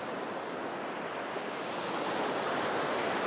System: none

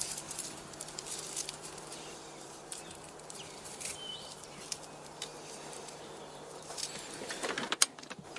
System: vocoder, BigVGAN v2